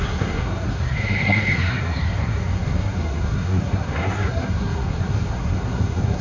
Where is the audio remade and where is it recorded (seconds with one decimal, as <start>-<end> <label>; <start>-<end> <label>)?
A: 0.0-6.2 remade